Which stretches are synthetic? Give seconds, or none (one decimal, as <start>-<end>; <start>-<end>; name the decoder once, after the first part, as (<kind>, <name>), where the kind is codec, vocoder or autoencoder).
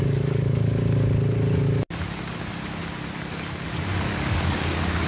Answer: 0.0-0.8 (codec, DAC); 3.9-5.1